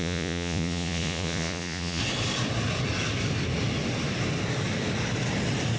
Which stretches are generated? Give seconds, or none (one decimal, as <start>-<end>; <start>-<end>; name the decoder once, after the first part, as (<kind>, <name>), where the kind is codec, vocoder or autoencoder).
0.0-2.0 (vocoder, Vocos)